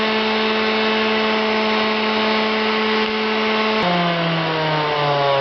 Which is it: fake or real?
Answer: real